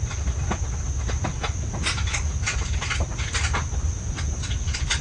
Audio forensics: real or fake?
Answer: real